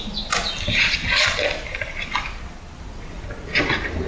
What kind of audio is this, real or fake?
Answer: real